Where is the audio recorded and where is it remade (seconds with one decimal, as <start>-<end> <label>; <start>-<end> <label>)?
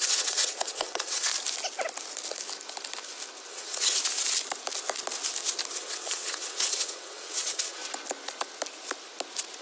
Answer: 0.0-1.3 remade; 1.3-3.5 recorded; 3.5-4.0 remade; 4.0-5.7 recorded; 5.7-7.8 remade; 7.8-9.6 recorded